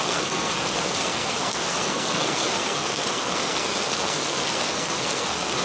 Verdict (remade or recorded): remade